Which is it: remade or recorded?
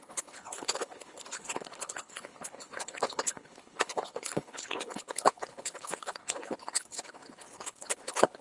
remade